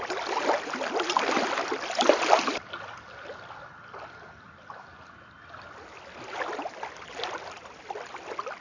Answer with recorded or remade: recorded